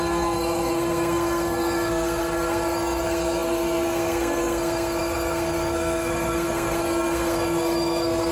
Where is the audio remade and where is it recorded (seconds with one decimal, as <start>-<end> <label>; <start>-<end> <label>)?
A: 0.0-8.3 remade